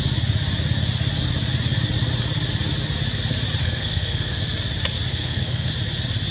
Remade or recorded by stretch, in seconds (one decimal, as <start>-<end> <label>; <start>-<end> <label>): 0.0-3.6 recorded; 3.6-4.4 remade; 4.4-5.1 recorded; 5.1-5.7 remade; 5.7-6.3 recorded